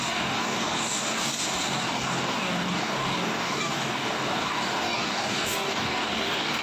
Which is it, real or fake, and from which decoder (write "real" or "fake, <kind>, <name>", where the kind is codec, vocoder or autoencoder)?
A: fake, codec, DAC